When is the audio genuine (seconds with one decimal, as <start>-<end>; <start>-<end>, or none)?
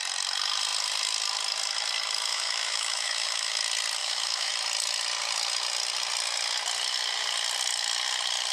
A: 0.0-2.3; 3.6-4.0; 4.5-8.5